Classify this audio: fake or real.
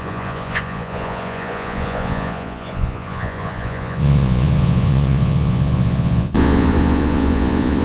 fake